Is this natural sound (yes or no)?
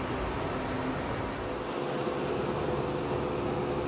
yes